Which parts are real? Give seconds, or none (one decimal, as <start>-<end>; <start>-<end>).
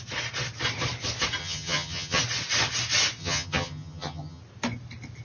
0.0-1.4; 2.2-3.2; 4.4-5.2